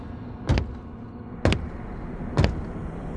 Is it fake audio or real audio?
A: real